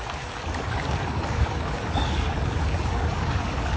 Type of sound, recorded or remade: remade